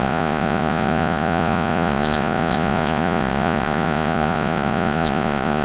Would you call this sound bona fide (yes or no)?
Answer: no